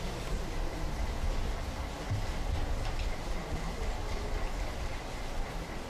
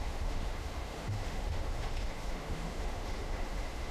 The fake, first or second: second